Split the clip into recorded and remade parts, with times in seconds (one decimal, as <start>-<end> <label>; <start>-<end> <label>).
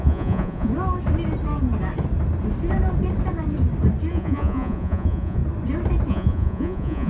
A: 0.0-0.7 remade; 0.7-4.1 recorded; 4.1-5.4 remade; 5.4-6.1 recorded; 6.1-7.1 remade